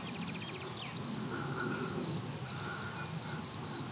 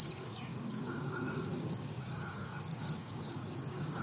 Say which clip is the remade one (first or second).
second